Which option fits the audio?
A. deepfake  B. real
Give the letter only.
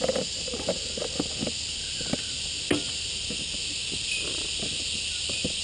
B